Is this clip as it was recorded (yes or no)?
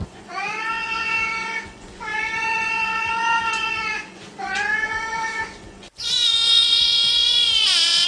no